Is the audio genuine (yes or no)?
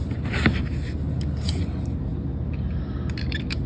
yes